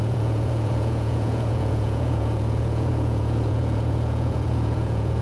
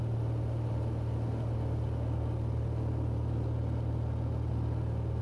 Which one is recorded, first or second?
second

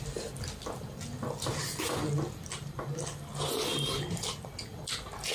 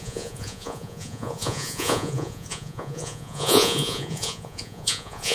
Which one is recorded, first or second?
first